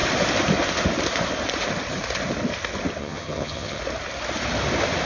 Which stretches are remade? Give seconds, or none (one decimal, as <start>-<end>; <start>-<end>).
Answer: 3.0-3.8